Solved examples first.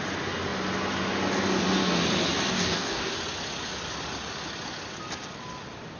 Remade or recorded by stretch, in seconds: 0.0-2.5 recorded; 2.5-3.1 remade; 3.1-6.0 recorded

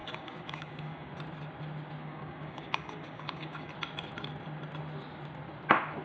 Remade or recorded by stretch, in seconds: 0.0-1.1 remade; 1.1-2.0 recorded; 2.0-3.7 remade; 3.7-6.0 recorded

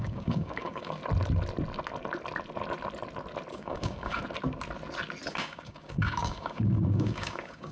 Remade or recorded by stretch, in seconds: 0.0-1.0 remade; 1.0-3.5 recorded; 3.5-4.2 remade; 4.2-5.3 recorded; 5.3-7.7 remade

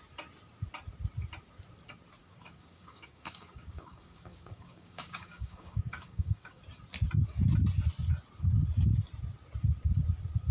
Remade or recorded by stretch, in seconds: 0.0-2.2 recorded; 2.2-6.6 remade; 6.6-10.5 recorded

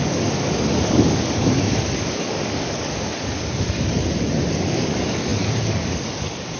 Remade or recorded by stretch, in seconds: 0.0-4.0 remade; 4.0-4.5 recorded; 4.5-6.6 remade

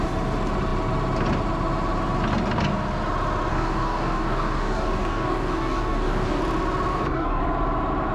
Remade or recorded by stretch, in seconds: 0.0-3.5 recorded; 3.5-6.4 remade; 6.4-6.9 recorded; 6.9-7.4 remade; 7.4-8.1 recorded

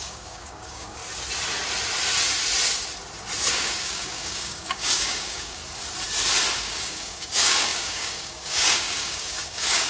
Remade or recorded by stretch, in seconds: 0.0-1.0 remade; 1.0-3.5 recorded; 3.5-5.6 remade; 5.6-6.6 recorded; 6.6-9.9 remade